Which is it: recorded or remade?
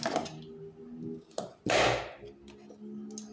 recorded